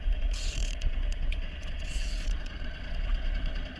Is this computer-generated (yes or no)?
yes